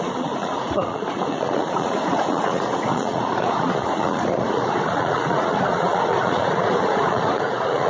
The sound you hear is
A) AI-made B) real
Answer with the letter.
A